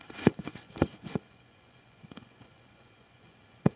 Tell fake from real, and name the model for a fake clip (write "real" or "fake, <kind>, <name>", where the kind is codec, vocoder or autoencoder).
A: fake, vocoder, Vocos